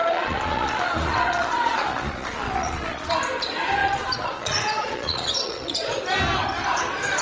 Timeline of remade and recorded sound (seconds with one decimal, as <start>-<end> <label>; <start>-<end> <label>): 0.0-3.1 remade; 3.1-3.8 recorded; 3.8-6.0 remade; 6.0-7.2 recorded